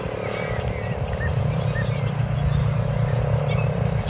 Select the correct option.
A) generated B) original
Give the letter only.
B